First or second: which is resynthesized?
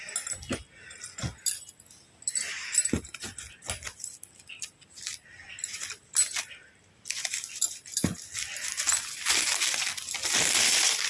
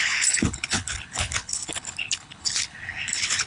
second